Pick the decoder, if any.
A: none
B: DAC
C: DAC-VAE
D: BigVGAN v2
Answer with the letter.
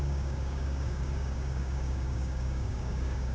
B